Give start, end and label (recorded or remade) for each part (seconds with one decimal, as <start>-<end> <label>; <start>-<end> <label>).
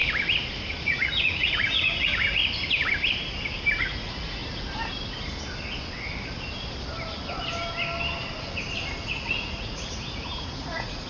0.0-0.8 recorded; 0.8-2.4 remade; 2.4-3.8 recorded; 3.8-4.4 remade; 4.4-9.1 recorded; 9.1-11.1 remade